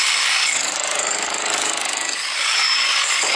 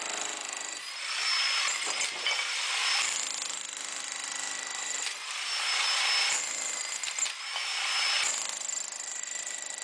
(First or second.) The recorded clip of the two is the second